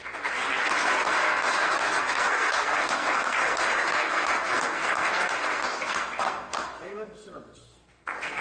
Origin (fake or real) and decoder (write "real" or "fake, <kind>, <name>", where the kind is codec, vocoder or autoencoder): fake, codec, SNAC